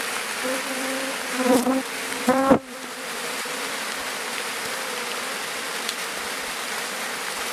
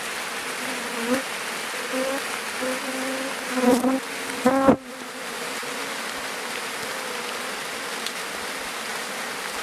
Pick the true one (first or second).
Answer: second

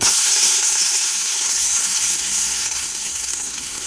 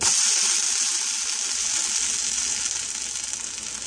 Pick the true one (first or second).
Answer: second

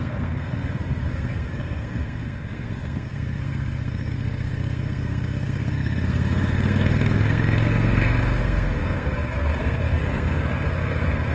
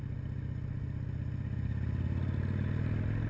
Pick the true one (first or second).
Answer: second